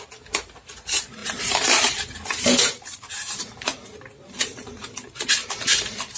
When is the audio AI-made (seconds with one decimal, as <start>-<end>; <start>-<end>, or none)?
1.2-4.9